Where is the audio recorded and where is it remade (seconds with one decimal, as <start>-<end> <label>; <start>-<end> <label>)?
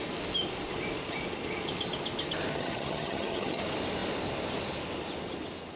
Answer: 0.0-2.5 recorded; 2.5-3.6 remade; 3.6-5.8 recorded